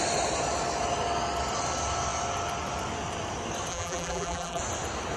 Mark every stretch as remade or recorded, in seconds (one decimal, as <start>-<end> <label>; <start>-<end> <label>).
0.0-3.7 recorded; 3.7-4.6 remade; 4.6-5.2 recorded